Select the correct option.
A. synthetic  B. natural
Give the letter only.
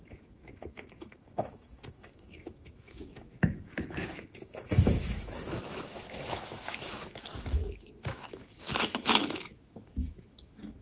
A